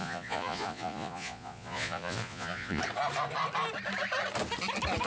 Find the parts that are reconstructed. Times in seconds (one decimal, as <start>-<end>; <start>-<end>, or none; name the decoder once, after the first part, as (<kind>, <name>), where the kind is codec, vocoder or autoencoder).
0.0-2.8 (vocoder, Vocos)